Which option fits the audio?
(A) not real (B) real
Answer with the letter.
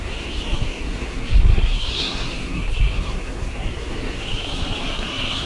A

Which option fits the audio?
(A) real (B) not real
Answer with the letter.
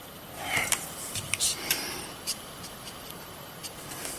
B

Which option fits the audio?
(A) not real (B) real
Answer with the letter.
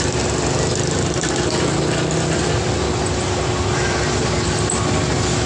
B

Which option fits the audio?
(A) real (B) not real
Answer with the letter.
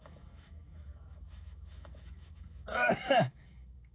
B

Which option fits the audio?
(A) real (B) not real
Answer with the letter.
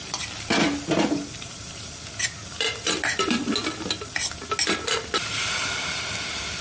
A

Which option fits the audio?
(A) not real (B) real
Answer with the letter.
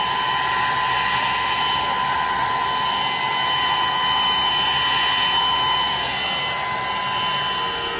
B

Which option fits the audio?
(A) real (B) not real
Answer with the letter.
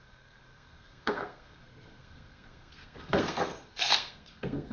B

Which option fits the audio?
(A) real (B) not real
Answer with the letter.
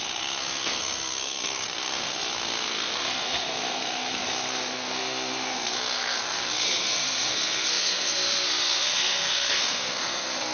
B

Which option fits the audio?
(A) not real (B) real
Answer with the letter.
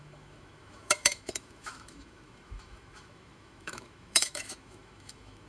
A